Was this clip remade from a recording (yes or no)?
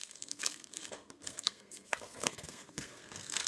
yes